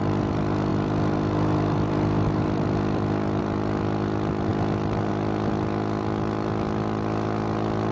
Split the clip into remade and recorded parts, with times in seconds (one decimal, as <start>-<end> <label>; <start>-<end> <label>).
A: 0.0-0.7 recorded; 0.7-3.4 remade; 3.4-7.9 recorded